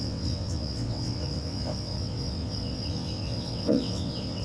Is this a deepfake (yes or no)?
yes